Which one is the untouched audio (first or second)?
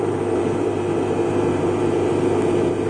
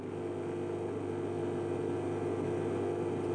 second